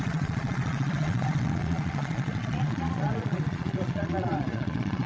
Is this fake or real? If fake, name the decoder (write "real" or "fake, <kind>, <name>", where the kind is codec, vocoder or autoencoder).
fake, vocoder, Vocos